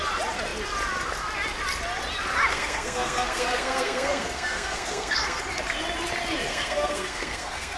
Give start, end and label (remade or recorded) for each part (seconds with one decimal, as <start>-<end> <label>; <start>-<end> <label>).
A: 0.0-2.5 recorded; 2.5-5.4 remade; 5.4-6.5 recorded; 6.5-7.8 remade